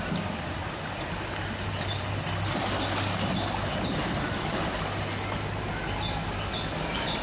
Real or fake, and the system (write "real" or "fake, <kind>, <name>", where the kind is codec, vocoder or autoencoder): real